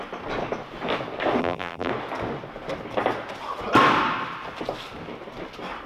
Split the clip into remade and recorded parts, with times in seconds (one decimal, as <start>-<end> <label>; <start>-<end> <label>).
0.0-1.4 recorded; 1.4-1.9 remade; 1.9-5.9 recorded